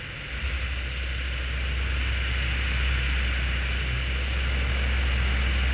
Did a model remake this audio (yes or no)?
no